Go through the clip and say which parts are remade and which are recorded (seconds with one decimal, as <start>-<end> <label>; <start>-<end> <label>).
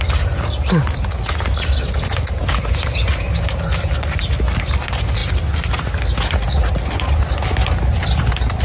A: 0.0-8.6 recorded